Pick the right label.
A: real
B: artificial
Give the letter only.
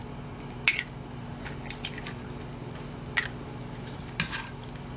A